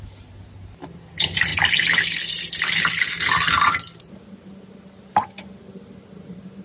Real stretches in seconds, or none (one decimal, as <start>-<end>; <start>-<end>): 0.0-6.6